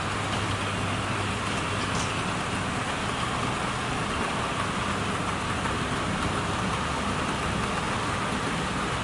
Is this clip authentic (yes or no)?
yes